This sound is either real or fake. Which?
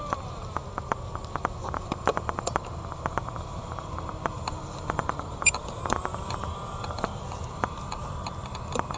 fake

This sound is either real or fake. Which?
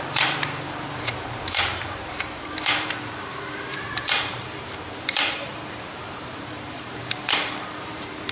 fake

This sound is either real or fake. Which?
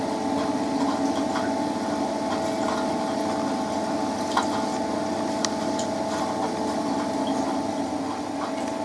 real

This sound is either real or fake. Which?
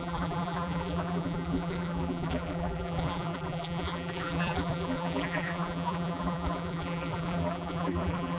fake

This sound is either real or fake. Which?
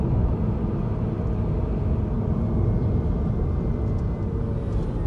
real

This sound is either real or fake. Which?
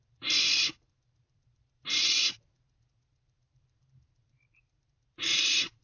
fake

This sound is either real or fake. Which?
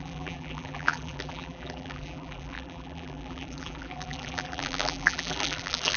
fake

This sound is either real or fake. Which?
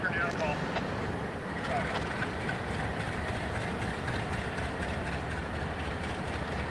fake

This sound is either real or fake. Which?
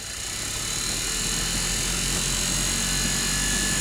real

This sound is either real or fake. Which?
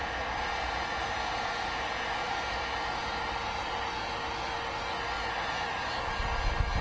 real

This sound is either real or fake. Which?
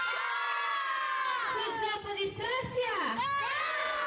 fake